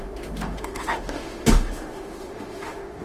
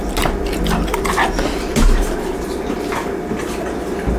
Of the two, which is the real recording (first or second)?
second